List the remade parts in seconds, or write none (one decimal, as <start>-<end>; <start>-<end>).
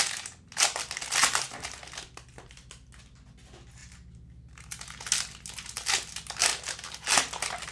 1.2-1.8; 6.5-7.1